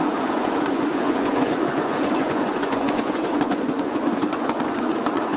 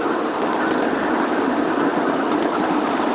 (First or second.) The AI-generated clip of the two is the first